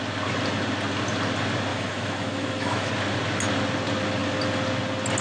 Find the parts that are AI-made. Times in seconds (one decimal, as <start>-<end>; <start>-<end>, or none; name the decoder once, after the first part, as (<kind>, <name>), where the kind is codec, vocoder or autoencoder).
1.7-2.9 (autoencoder, DAC-VAE)